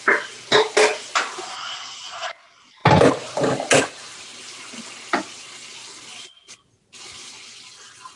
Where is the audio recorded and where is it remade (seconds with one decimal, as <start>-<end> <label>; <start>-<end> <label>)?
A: 0.0-8.2 recorded